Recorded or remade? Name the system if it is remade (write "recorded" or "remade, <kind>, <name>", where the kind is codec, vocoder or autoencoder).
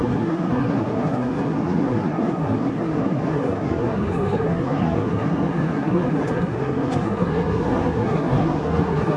remade, codec, SNAC